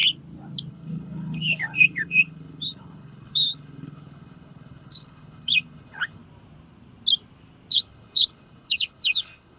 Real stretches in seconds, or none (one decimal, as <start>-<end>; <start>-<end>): 0.0-0.7; 6.2-7.7